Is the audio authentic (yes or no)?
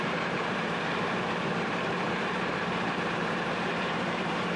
no